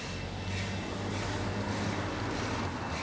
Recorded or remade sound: recorded